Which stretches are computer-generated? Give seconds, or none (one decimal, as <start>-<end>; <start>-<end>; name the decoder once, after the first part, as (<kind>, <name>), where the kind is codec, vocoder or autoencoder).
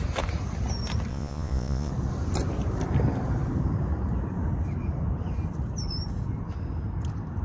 1.1-1.9 (vocoder, Vocos)